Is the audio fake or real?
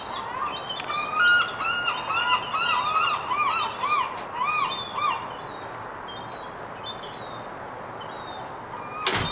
real